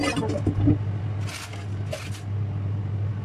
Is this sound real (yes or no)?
yes